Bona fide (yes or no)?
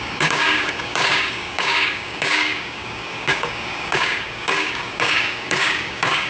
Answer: no